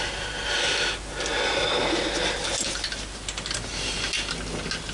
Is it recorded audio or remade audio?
recorded